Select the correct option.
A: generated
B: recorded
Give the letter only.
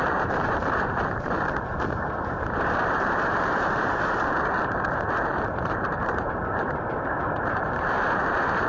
A